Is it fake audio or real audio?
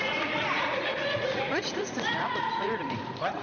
fake